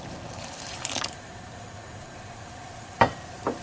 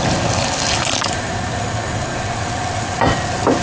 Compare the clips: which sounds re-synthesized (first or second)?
first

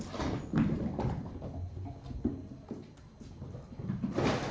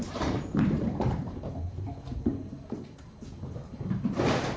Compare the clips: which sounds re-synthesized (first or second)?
second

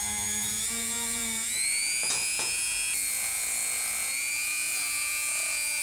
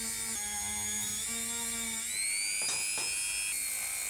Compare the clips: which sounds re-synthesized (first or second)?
first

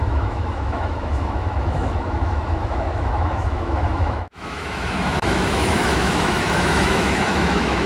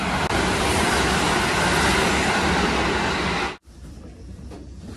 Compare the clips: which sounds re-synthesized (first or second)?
first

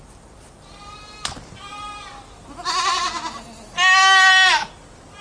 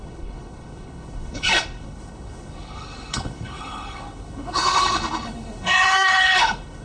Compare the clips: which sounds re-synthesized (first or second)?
second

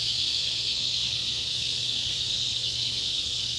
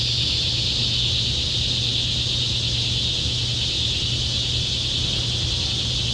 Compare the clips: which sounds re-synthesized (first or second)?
first